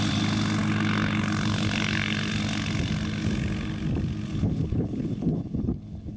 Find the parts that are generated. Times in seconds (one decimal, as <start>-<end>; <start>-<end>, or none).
4.3-6.2